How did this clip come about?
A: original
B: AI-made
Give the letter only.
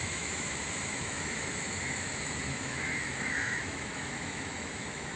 B